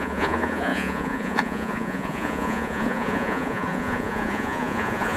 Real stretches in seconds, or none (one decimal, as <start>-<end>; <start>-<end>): none